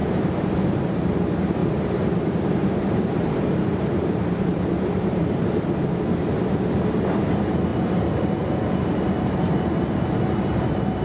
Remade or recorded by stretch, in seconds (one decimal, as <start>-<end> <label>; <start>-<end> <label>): 0.0-1.0 remade; 1.0-1.6 recorded; 1.6-5.6 remade; 5.6-11.0 recorded

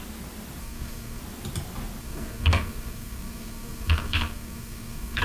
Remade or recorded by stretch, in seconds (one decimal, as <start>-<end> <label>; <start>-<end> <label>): 0.0-0.6 recorded; 0.6-1.2 remade; 1.2-2.0 recorded; 2.0-5.2 remade